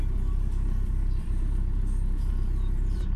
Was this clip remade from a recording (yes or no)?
yes